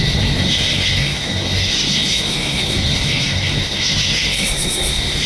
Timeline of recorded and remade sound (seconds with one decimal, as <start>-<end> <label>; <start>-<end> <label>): 0.0-5.3 remade